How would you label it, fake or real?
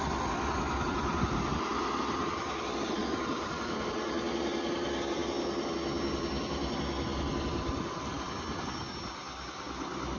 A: real